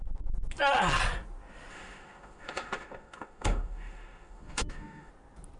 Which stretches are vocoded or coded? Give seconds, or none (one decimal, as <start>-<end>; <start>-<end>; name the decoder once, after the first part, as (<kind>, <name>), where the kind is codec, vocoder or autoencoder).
1.7-5.1 (autoencoder, DAC-VAE)